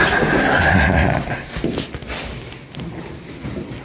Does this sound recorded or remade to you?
recorded